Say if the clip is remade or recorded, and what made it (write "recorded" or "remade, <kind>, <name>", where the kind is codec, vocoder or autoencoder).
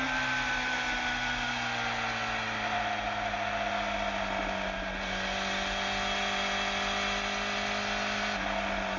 recorded